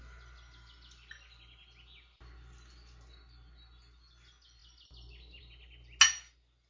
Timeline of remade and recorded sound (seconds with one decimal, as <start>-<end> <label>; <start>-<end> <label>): 0.0-6.7 recorded